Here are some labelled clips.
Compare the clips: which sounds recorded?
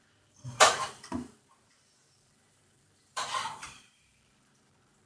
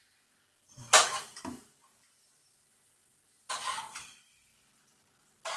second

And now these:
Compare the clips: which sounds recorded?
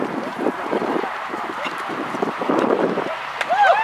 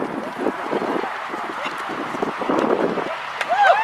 second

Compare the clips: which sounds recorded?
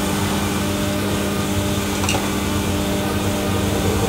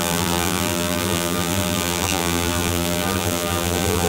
first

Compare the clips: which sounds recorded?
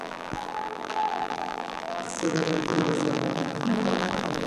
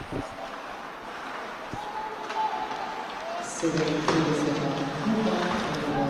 second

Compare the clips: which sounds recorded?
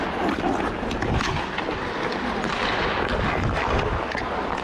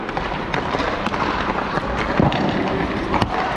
first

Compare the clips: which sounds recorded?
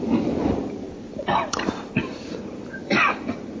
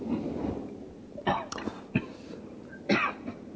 second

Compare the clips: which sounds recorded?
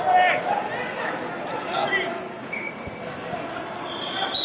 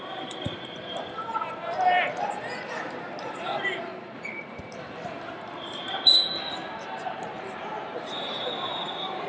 first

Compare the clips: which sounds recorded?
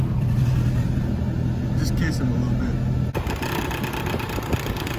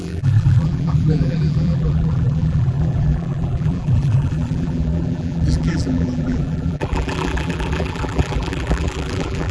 first